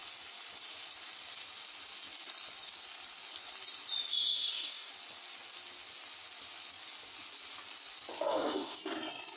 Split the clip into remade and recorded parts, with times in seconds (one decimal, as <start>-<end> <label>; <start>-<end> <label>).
0.0-4.1 recorded; 4.1-4.9 remade; 4.9-8.3 recorded; 8.3-8.8 remade; 8.8-9.4 recorded